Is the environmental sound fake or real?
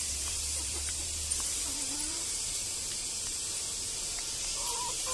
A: fake